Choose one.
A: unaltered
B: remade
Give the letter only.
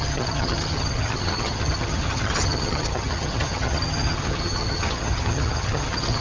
B